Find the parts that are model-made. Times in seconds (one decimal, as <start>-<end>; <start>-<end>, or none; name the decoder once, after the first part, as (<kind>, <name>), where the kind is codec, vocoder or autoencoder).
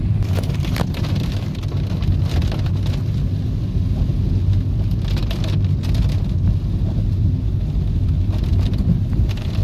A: none